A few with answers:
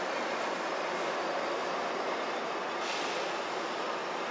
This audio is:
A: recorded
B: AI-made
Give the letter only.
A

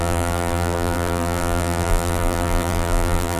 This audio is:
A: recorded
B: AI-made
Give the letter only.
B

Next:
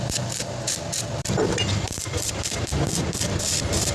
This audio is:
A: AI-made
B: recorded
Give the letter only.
A